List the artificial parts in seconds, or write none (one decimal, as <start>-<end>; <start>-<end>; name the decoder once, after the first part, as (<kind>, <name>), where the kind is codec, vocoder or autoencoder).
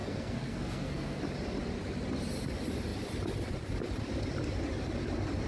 0.0-1.2 (codec, SNAC)